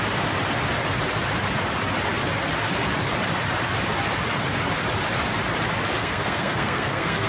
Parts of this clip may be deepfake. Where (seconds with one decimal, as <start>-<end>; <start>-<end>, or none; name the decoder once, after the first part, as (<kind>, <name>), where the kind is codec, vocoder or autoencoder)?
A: 6.0-7.3 (codec, SNAC)